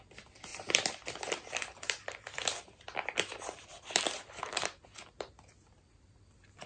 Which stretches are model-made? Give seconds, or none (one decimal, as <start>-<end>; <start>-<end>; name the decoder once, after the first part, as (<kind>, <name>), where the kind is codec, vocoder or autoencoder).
none